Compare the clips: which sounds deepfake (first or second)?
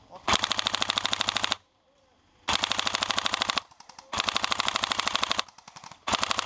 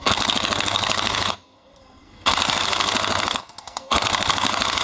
second